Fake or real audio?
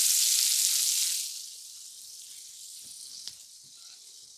real